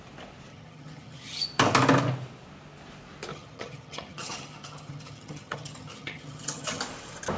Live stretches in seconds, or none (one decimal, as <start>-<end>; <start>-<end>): 0.0-0.5; 1.4-3.3; 6.8-7.4